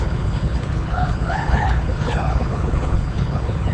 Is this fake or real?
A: fake